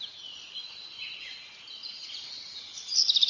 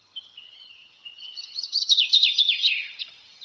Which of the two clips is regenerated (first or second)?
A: second